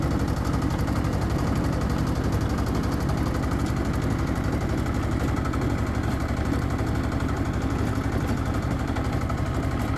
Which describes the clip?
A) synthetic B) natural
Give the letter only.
B